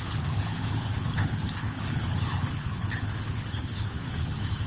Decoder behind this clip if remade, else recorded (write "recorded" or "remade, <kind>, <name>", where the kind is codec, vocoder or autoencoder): remade, codec, HILCodec